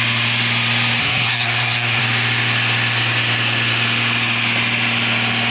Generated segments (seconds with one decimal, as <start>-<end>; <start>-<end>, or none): 1.0-2.0